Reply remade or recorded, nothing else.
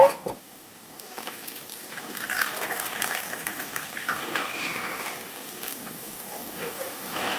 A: remade